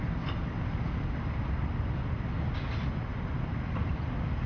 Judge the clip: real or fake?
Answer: real